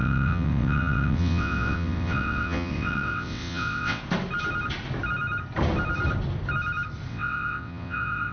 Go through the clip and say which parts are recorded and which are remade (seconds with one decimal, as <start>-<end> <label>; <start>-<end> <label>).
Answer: 0.0-4.0 remade; 4.0-7.1 recorded; 7.1-8.3 remade